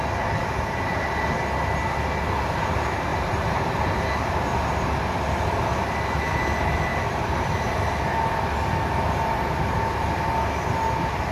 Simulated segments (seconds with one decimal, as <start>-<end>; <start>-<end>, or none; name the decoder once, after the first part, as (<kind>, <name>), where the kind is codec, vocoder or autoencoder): 3.1-3.7 (vocoder, BigVGAN v2); 6.9-7.9